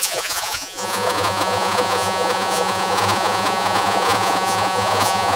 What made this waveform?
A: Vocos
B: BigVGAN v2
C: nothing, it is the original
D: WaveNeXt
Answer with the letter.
A